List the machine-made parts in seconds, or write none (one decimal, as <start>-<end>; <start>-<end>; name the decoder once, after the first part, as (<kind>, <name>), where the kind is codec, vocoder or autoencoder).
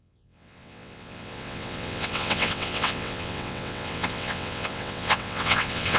0.0-6.0 (vocoder, WaveNeXt)